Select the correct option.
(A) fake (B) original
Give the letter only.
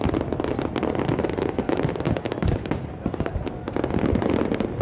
B